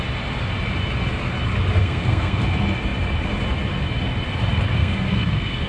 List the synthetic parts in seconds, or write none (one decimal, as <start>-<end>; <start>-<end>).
1.8-2.4; 4.8-5.7